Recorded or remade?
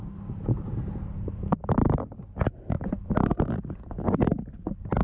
recorded